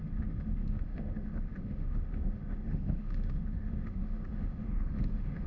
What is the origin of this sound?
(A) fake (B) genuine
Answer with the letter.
A